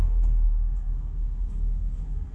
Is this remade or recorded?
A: remade